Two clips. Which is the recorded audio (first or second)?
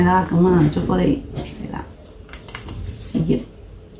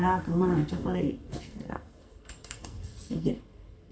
first